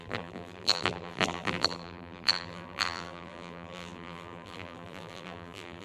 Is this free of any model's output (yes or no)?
no